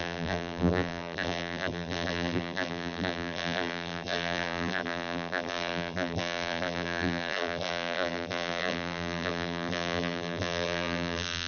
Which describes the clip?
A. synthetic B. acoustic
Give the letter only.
A